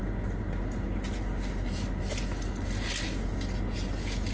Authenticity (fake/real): real